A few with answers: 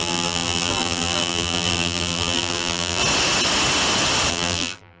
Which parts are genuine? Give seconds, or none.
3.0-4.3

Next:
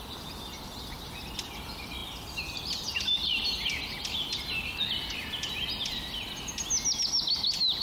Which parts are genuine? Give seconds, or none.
0.0-7.8

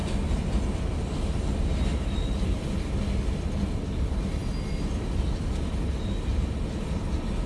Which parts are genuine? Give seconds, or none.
0.0-7.5

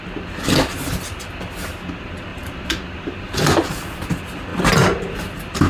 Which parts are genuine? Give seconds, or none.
0.0-2.3; 4.0-4.5; 5.3-5.7

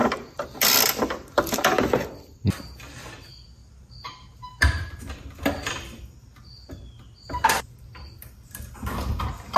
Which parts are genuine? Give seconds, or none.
0.6-3.6; 5.0-9.6

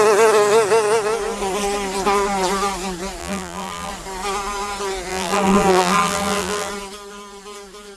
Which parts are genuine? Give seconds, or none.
0.0-3.2; 3.9-5.1; 6.7-8.0

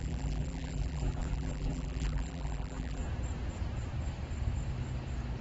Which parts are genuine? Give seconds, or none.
3.0-5.4

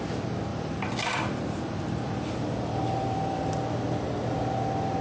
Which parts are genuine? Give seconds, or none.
0.0-0.5; 3.5-5.0